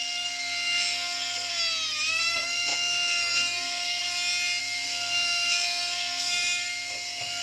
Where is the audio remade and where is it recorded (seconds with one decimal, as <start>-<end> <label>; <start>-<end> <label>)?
0.0-1.5 remade; 1.5-2.1 recorded; 2.1-4.0 remade; 4.0-4.6 recorded; 4.6-7.4 remade